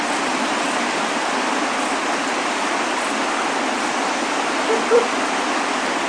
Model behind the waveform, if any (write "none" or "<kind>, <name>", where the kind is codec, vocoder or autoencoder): none